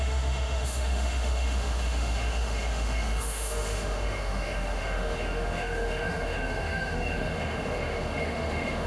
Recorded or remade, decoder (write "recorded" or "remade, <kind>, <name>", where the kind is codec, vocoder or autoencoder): remade, autoencoder, DAC-VAE